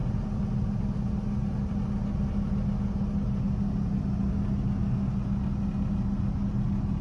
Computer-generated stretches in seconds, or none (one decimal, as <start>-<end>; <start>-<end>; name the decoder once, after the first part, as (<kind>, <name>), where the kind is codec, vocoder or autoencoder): none